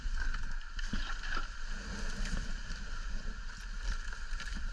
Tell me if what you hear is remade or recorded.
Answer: remade